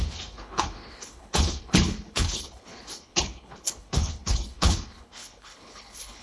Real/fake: fake